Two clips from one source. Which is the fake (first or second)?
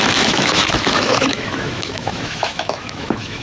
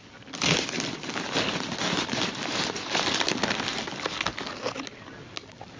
first